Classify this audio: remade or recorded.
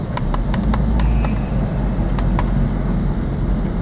recorded